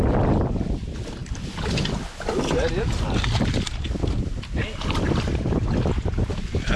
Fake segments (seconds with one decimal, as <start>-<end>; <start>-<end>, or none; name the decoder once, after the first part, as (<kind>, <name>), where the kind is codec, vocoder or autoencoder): none

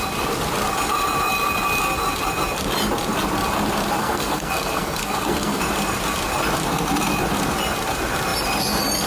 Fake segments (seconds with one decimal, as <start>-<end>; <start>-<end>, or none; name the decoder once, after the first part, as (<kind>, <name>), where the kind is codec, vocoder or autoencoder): 4.0-5.6 (codec, SNAC)

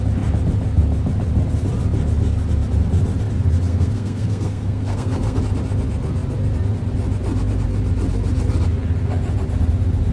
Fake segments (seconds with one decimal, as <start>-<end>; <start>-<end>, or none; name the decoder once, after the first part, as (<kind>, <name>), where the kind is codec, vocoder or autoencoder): 3.7-5.4 (codec, SNAC)

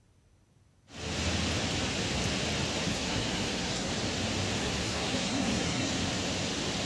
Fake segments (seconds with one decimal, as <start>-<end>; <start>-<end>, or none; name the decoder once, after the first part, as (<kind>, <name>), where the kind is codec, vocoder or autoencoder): 2.9-3.9 (codec, SNAC); 4.6-5.9

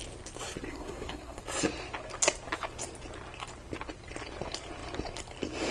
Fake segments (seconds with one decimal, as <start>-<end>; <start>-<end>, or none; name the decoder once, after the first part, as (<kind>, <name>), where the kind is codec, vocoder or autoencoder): 0.7-1.4 (codec, SNAC)

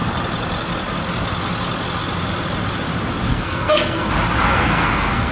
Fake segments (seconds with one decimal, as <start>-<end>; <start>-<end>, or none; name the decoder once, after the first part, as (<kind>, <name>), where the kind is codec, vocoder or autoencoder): 3.3-4.1 (codec, SNAC); 4.5-5.3

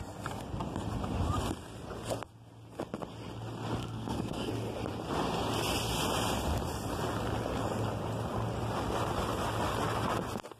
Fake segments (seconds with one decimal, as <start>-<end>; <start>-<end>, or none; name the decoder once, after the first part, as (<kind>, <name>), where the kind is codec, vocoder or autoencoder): 3.8-4.5 (codec, SNAC)

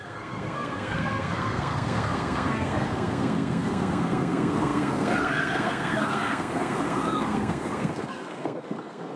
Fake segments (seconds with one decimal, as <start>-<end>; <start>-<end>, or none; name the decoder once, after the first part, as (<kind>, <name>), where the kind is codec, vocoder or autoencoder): 0.0-9.2 (codec, SNAC)